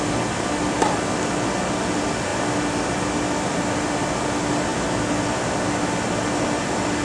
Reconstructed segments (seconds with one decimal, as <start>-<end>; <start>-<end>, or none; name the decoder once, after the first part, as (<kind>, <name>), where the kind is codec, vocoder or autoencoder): none